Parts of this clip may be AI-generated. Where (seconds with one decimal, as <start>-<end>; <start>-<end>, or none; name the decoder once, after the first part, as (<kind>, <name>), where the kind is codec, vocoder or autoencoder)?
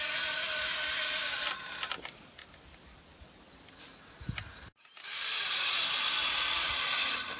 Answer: none